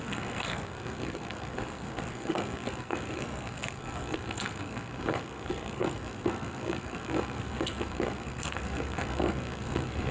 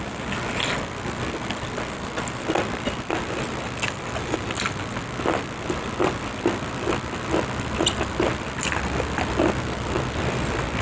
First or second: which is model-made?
first